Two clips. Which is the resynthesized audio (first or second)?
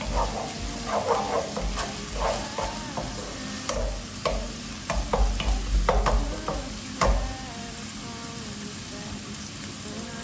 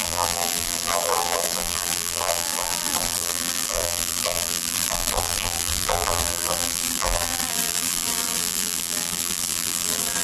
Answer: second